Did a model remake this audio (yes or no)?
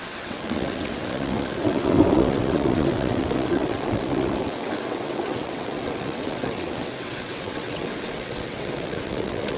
yes